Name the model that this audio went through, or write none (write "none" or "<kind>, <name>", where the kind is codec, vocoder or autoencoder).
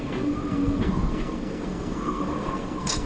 codec, SNAC